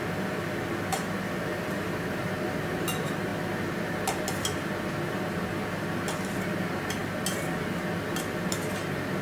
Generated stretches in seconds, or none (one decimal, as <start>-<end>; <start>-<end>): 0.9-2.3